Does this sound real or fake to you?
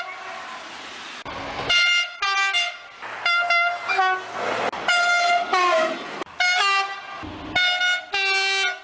real